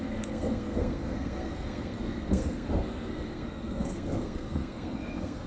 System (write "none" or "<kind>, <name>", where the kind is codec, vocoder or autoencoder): codec, SNAC